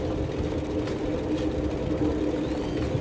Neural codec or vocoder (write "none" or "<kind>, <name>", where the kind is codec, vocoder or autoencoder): none